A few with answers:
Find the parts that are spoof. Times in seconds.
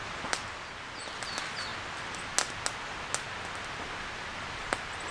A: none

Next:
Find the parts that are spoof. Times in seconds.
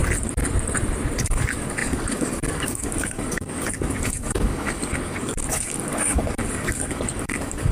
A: 1.2-7.7 (codec, DAC)